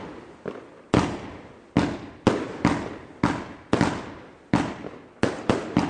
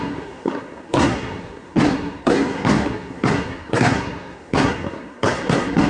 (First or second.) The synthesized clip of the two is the second